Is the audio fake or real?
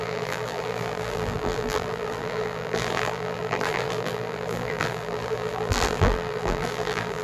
fake